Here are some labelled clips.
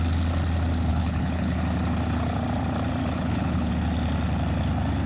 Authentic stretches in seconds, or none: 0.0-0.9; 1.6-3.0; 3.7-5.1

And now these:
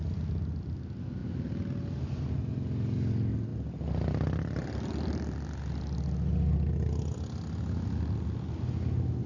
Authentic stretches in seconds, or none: 0.0-9.3

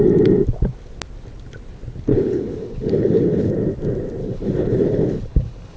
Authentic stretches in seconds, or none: 0.0-2.1; 3.5-4.2

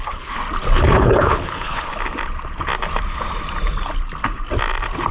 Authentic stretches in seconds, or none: 0.4-0.9; 1.9-5.1

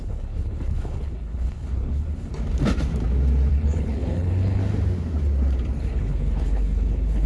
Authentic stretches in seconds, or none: 2.3-3.5; 4.6-5.8

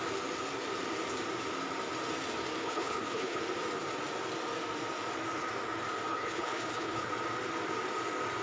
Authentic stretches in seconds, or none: 0.0-2.6; 3.4-6.1; 7.1-8.4

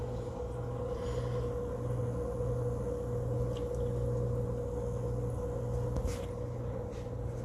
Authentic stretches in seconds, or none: 0.0-7.4